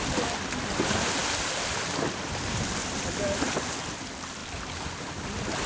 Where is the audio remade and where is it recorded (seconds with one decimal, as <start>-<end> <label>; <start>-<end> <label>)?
0.0-5.7 recorded